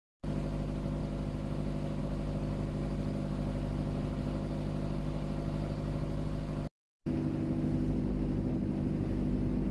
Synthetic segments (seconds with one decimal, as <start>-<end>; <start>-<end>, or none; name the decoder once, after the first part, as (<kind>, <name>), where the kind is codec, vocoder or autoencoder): none